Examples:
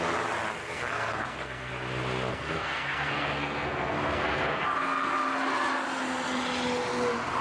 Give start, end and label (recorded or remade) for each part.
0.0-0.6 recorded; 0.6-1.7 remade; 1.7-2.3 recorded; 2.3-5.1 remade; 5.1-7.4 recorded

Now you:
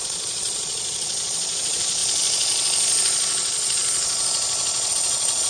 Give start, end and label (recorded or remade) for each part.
0.0-2.0 remade; 2.0-4.9 recorded; 4.9-5.5 remade

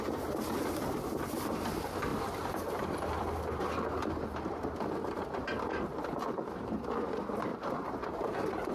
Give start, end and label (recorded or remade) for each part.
0.0-8.7 remade

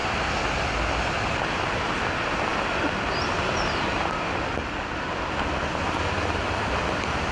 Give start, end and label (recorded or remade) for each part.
0.0-7.3 recorded

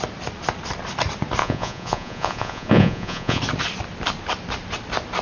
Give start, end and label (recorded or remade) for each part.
0.0-1.4 recorded; 1.4-3.4 remade; 3.4-5.2 recorded

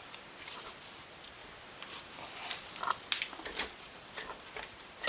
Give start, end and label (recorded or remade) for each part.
0.0-1.4 remade; 1.4-3.6 recorded; 3.6-5.1 remade